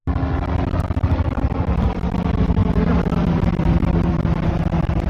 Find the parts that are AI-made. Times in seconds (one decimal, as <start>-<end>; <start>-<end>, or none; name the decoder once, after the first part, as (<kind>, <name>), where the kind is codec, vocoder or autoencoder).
0.0-5.1 (vocoder, BigVGAN v2)